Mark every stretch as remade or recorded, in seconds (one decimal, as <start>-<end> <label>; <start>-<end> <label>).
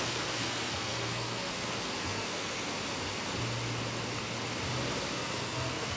0.0-2.7 remade; 2.7-5.1 recorded; 5.1-6.0 remade